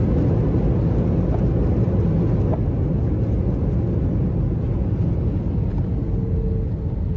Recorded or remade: recorded